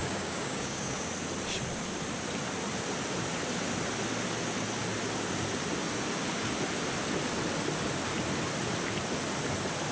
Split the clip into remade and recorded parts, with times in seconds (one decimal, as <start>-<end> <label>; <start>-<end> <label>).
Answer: 0.0-1.1 remade; 1.1-9.9 recorded